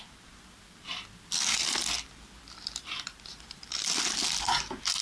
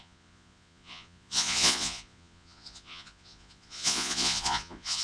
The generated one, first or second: second